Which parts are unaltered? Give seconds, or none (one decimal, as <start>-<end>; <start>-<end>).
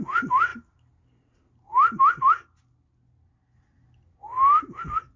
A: 0.0-5.2